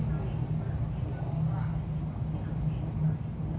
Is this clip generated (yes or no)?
no